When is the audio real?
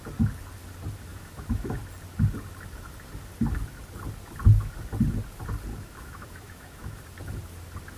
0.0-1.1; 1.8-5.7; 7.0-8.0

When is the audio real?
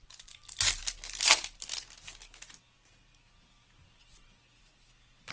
0.8-3.9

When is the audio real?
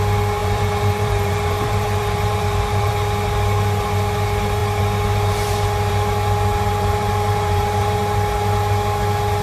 0.0-0.4; 2.9-6.7; 8.0-9.4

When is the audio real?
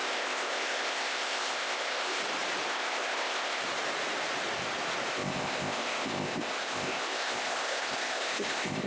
2.2-2.7; 3.6-5.1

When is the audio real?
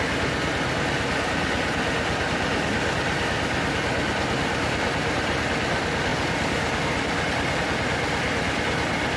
0.0-9.2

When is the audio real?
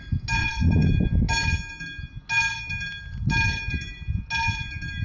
0.0-0.4; 0.9-5.0